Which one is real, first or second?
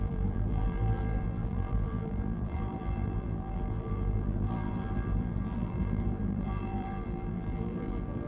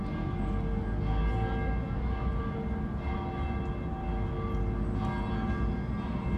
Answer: second